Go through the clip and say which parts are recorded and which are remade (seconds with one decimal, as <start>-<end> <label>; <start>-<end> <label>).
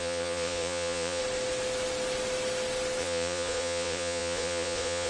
0.0-1.2 remade; 1.2-3.0 recorded; 3.0-5.1 remade